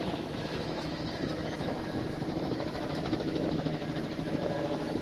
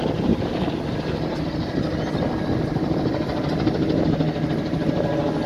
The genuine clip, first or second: second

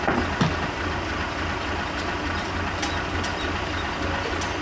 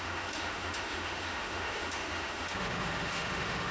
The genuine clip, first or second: first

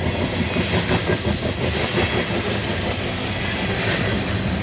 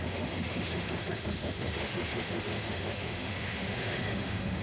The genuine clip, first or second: first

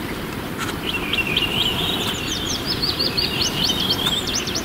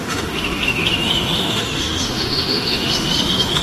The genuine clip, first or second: first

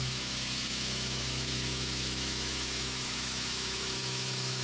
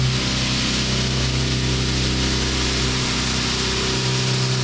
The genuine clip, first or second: second